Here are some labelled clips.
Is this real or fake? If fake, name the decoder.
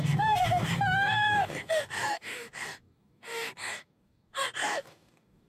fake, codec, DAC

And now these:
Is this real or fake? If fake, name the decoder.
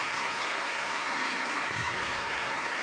fake, codec, SNAC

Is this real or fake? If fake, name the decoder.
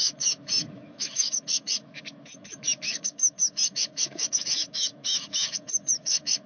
fake, autoencoder, DAC-VAE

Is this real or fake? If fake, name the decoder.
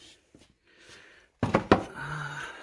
real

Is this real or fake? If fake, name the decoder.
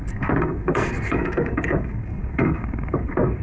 fake, codec, SNAC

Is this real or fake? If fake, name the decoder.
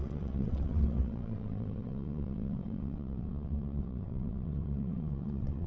fake, vocoder, WaveNeXt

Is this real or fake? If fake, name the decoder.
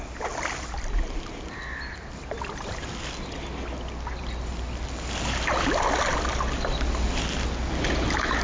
real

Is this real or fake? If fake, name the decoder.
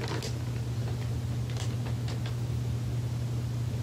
real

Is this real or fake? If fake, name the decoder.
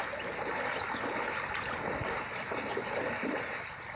real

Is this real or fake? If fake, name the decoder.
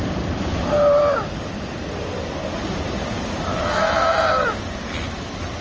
real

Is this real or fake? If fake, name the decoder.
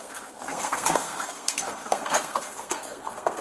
fake, codec, SNAC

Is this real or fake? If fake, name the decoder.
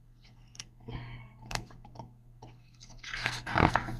fake, codec, SNAC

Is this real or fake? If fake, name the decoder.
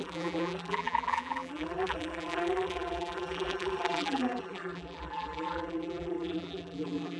fake, vocoder, BigVGAN v2